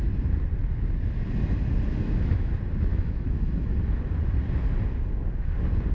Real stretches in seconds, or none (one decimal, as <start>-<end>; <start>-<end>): 0.0-2.0; 2.5-2.9; 3.8-5.9